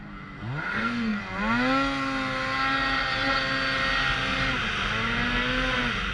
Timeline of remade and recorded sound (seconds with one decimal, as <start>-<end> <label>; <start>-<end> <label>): 0.0-0.6 recorded; 0.6-1.2 remade; 1.2-6.1 recorded

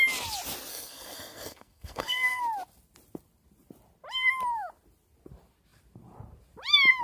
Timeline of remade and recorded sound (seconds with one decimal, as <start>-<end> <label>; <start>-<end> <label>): 0.0-0.7 recorded; 0.7-2.4 remade; 2.4-7.0 recorded